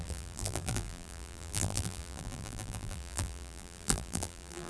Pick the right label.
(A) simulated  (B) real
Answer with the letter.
A